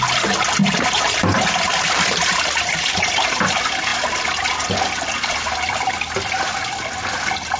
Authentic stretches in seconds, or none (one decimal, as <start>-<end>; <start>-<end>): 0.0-0.6; 1.6-7.6